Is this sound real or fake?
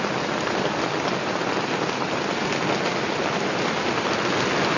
real